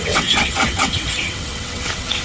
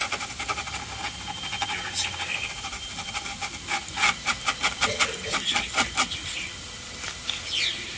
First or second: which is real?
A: second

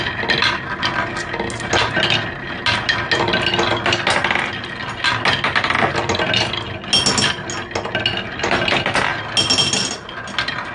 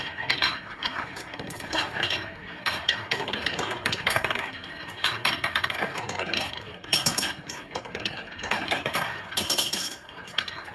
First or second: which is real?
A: first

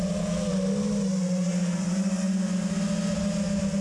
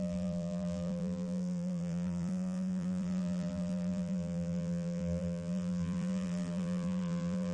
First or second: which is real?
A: first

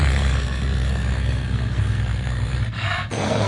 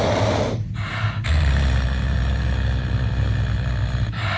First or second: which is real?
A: second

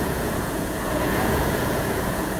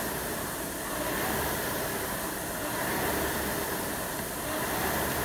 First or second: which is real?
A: second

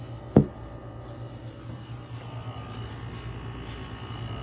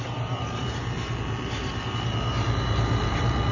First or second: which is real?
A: first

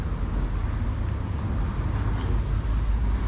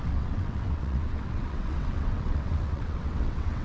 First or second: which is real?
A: first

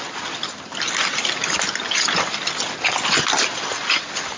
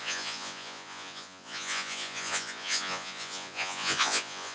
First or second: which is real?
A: first